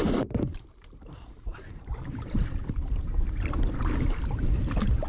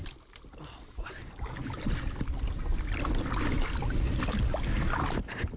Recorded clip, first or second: second